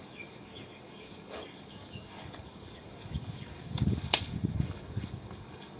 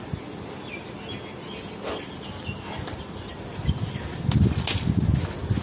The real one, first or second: second